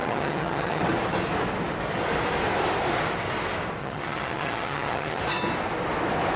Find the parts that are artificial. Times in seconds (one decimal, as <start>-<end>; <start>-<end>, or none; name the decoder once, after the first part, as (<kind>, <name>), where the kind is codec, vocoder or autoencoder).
0.0-0.8 (vocoder, HiFi-GAN); 3.8-5.2